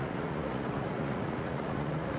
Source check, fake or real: fake